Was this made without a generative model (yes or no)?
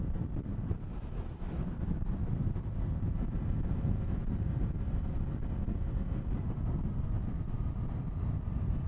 yes